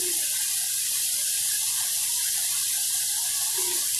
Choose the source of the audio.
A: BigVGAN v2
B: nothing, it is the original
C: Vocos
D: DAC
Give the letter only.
A